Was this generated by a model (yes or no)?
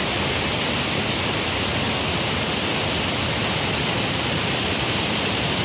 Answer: no